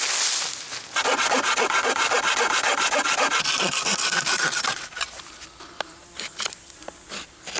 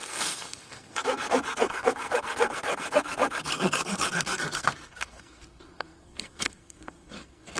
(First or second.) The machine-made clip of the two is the second